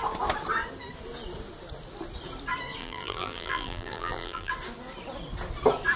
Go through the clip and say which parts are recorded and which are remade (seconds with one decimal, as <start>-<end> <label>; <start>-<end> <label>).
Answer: 0.0-2.8 recorded; 2.8-4.5 remade; 4.5-6.0 recorded